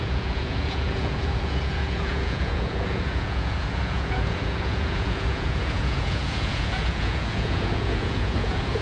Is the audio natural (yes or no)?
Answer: no